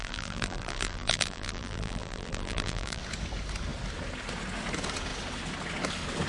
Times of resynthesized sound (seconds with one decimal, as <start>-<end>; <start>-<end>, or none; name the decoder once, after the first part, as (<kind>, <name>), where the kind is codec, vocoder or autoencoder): 0.0-3.0 (vocoder, BigVGAN v2)